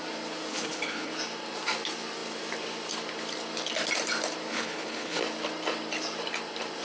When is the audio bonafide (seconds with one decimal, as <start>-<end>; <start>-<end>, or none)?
0.0-0.5; 1.1-4.5; 5.2-6.8